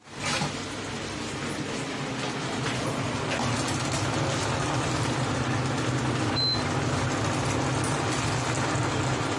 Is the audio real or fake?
real